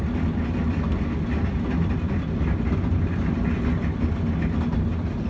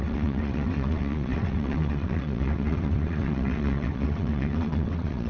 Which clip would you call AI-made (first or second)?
second